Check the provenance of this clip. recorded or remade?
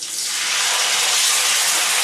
recorded